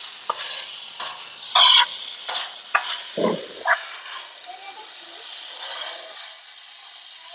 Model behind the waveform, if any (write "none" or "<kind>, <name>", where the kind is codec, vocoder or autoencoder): none